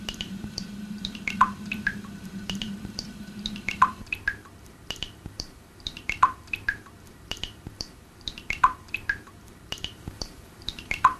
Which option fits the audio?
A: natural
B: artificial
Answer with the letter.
B